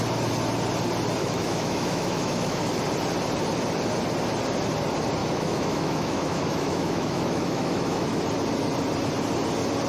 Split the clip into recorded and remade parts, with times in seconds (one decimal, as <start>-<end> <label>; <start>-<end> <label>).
0.0-1.2 recorded; 1.2-2.8 remade; 2.8-5.2 recorded; 5.2-8.2 remade; 8.2-9.9 recorded